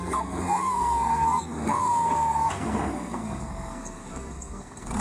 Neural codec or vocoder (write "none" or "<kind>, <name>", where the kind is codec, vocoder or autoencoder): codec, SNAC